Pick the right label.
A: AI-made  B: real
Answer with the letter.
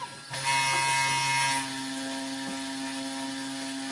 B